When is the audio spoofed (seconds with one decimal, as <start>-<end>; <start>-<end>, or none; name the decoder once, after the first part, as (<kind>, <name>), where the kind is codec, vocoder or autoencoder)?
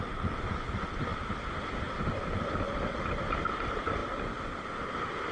none